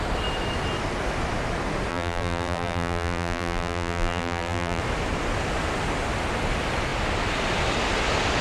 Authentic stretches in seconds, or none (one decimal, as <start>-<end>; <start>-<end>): 0.0-1.9; 4.8-8.4